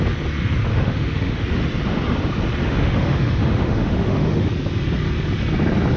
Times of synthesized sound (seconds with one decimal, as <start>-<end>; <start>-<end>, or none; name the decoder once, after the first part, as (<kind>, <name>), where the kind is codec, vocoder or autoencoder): 0.7-1.6 (autoencoder, DAC-VAE); 2.6-4.5